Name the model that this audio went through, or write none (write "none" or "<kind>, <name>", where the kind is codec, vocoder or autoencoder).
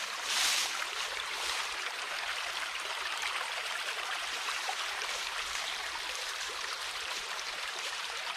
vocoder, BigVGAN v2